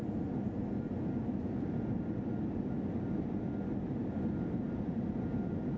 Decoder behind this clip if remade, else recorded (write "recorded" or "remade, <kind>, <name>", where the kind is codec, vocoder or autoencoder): recorded